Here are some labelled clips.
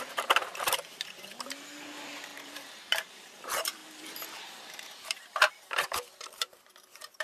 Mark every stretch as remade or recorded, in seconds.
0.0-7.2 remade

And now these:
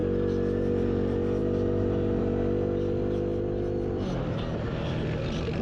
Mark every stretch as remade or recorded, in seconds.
0.0-0.8 recorded; 0.8-3.3 remade; 3.3-3.9 recorded; 3.9-5.6 remade